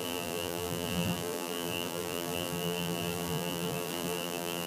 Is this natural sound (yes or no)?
no